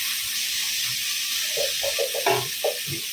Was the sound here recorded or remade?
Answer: recorded